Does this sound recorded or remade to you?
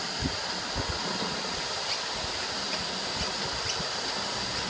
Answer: recorded